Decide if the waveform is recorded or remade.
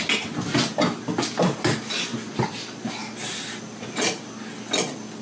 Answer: recorded